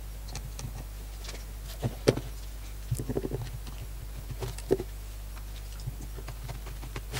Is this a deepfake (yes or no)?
no